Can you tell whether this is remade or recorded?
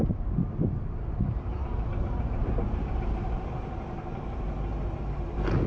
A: remade